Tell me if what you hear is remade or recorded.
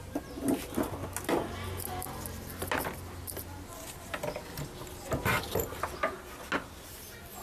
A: recorded